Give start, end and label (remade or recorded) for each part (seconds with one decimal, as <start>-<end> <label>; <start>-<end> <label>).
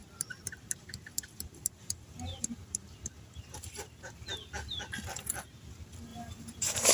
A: 0.0-4.1 remade; 4.1-6.1 recorded; 6.1-6.9 remade